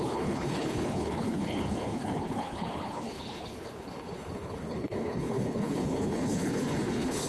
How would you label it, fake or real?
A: fake